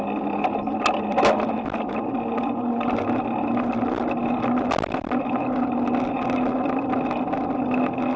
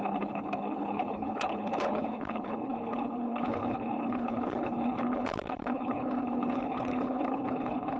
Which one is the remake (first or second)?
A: second